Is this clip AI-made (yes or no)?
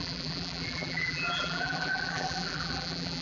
yes